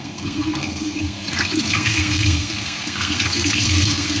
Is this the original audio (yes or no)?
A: no